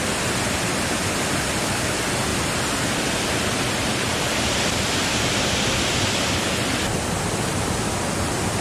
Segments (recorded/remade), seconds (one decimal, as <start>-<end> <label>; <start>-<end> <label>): 0.0-8.6 recorded